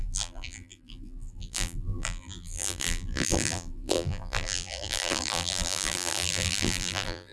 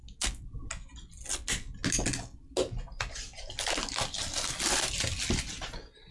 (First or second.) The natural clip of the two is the second